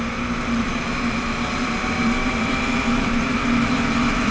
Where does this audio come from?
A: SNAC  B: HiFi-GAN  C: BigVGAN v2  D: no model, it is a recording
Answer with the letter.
C